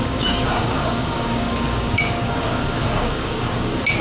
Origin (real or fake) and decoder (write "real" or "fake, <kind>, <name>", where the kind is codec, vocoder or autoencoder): fake, codec, DAC